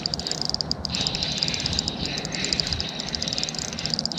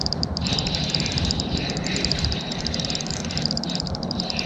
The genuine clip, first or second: first